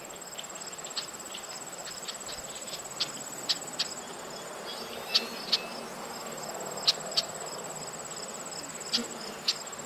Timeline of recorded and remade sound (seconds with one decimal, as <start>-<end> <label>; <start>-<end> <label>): 0.0-9.9 recorded